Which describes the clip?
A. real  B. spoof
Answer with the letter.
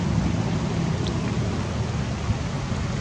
A